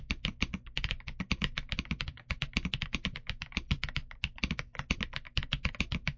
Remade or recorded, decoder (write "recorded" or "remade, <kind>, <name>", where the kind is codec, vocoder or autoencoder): recorded